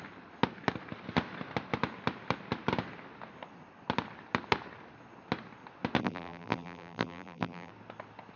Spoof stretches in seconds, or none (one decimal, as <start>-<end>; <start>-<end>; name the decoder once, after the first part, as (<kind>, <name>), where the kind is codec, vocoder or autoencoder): 6.0-7.7 (vocoder, BigVGAN v2)